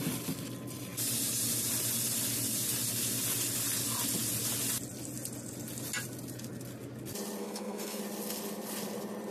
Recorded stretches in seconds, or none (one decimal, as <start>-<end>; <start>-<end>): 0.0-7.4; 8.0-9.3